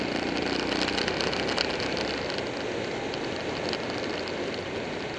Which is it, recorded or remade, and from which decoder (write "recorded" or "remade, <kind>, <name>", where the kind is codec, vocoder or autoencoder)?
recorded